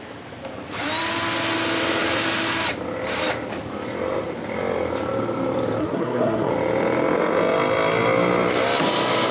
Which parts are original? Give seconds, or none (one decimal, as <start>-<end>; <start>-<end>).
0.0-5.8; 6.5-9.3